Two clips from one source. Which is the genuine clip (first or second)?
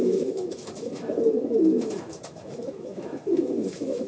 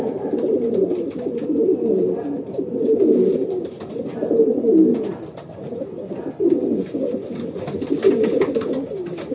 second